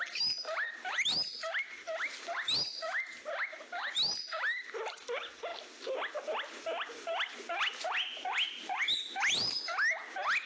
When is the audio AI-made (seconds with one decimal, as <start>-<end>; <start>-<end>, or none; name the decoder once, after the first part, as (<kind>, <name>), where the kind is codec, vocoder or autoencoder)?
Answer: none